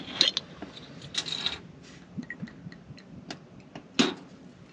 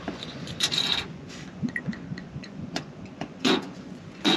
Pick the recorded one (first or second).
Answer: first